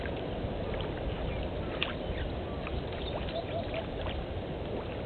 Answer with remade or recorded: recorded